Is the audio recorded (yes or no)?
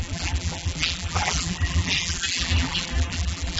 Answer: no